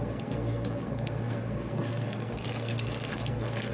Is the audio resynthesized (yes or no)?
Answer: yes